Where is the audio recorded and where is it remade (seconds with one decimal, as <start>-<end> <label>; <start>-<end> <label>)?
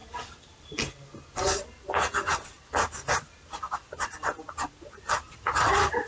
0.0-6.1 recorded